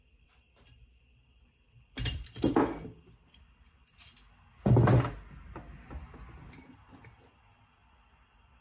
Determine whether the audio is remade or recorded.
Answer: recorded